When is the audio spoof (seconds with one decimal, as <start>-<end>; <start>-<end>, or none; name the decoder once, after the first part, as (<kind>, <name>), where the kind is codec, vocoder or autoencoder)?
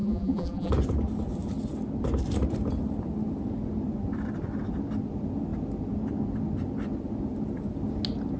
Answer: 0.0-0.7 (vocoder, BigVGAN v2)